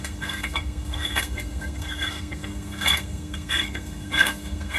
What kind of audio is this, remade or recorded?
remade